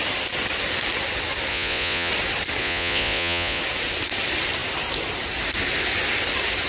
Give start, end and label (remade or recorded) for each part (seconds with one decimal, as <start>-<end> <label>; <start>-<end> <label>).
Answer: 0.0-1.5 recorded; 1.5-2.1 remade; 2.1-2.6 recorded; 2.6-3.6 remade; 3.6-6.7 recorded